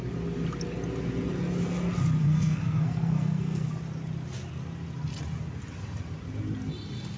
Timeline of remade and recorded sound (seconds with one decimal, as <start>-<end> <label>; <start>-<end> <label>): 0.0-2.2 recorded; 2.2-3.7 remade; 3.7-7.2 recorded